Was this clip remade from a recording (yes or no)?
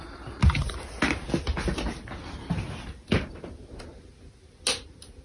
no